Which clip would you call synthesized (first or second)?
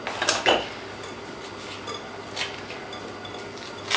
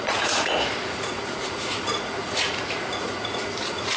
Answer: second